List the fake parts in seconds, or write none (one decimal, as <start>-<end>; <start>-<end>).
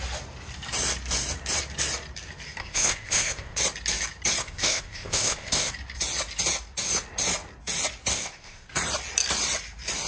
2.6-3.6; 4.4-5.7; 8.1-8.7